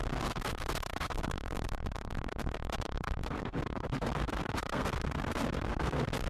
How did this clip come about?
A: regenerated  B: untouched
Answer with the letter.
A